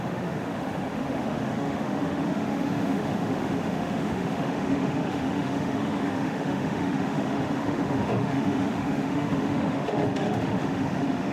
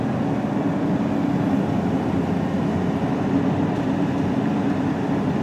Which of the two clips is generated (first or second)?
first